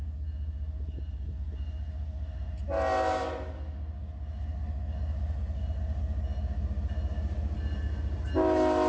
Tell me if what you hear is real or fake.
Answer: real